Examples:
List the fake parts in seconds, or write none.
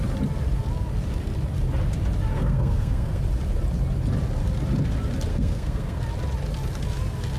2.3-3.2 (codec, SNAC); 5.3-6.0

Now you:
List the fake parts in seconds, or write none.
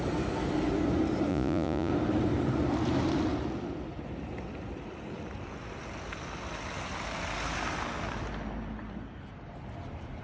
1.3-1.9 (vocoder, Vocos)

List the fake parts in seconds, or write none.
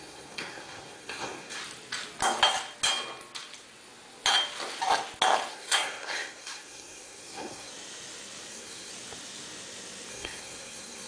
0.0-1.6 (codec, SNAC); 5.5-7.7; 8.5-8.9; 10.1-11.1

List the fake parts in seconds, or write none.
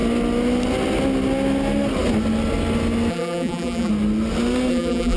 3.1-3.9 (vocoder, BigVGAN v2); 4.7-5.2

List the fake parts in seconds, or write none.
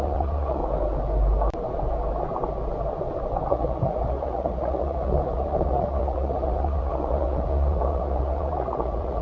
0.0-0.6 (vocoder, Vocos); 3.5-9.2